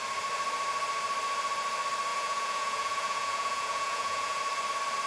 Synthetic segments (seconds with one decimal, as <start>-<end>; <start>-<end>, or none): 2.1-4.4